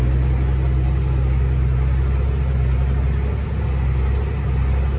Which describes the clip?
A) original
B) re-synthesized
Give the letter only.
A